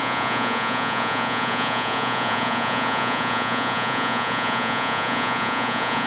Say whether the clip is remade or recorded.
remade